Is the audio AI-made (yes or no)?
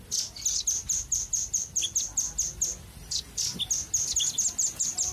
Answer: no